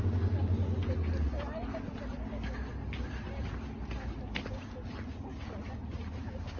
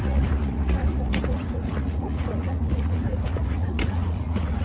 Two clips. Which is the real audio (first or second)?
first